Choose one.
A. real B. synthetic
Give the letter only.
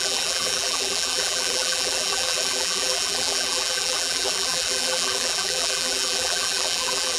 B